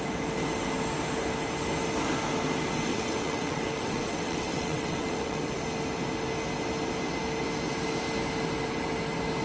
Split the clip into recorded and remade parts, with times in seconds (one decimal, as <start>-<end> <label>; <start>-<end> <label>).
0.0-2.9 recorded; 2.9-5.5 remade; 5.5-9.4 recorded